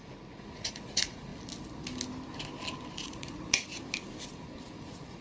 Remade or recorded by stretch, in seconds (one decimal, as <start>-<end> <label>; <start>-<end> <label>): 0.0-1.3 remade; 1.3-3.0 recorded; 3.0-3.7 remade; 3.7-4.8 recorded; 4.8-5.2 remade